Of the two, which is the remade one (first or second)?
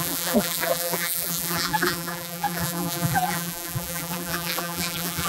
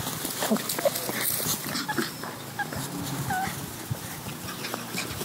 first